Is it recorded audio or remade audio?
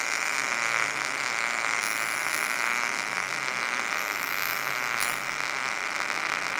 recorded